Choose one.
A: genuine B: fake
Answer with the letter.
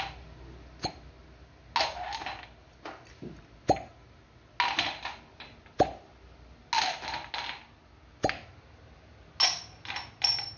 A